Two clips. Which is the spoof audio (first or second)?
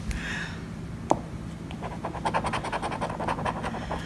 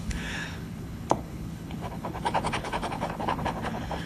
second